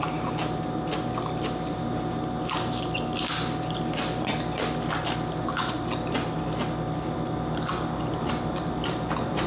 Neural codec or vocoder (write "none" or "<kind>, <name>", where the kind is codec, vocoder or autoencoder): none